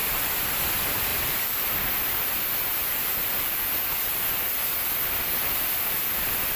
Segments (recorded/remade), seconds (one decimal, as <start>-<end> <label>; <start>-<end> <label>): 0.0-1.1 recorded; 1.1-2.1 remade; 2.1-2.8 recorded; 2.8-3.6 remade; 3.6-5.4 recorded; 5.4-6.6 remade